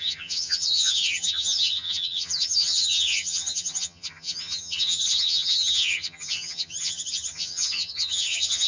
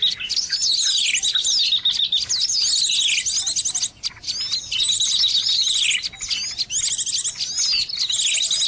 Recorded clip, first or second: second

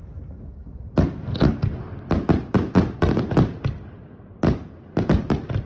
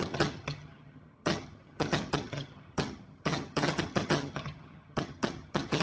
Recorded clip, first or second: first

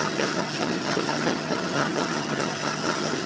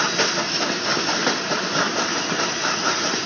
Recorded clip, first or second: second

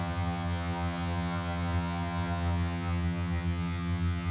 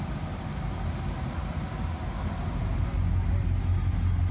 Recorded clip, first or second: second